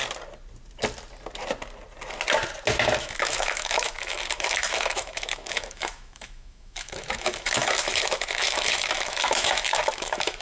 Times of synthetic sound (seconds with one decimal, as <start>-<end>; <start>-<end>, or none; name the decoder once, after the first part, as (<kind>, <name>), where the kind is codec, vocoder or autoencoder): 3.0-10.4 (autoencoder, DAC-VAE)